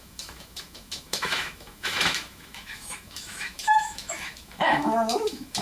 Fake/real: fake